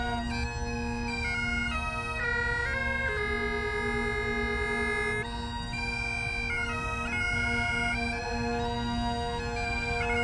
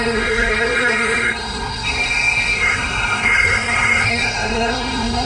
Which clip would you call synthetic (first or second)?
second